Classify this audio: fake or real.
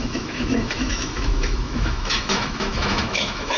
fake